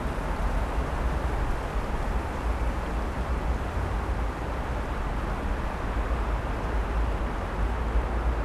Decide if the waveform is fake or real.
real